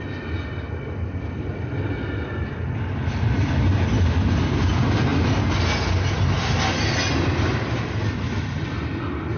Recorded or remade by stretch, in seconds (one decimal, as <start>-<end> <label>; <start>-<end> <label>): 0.0-9.4 recorded